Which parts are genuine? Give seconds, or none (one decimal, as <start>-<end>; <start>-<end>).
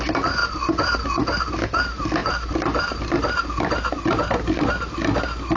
0.0-5.6